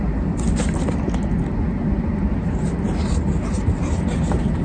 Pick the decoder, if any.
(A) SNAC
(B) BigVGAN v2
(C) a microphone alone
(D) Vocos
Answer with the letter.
C